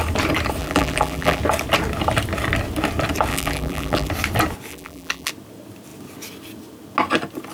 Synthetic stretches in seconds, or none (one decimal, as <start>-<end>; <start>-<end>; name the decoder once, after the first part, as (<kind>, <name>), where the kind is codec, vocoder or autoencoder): 0.6-1.4 (vocoder, BigVGAN v2); 3.3-4.1; 4.7-5.3

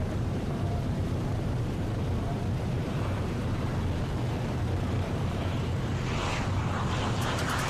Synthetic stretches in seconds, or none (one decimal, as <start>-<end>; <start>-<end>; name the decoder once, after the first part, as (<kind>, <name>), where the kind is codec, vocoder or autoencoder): 0.0-3.7 (vocoder, BigVGAN v2); 4.4-7.7